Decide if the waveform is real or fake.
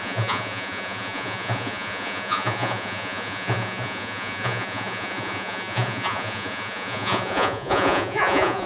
fake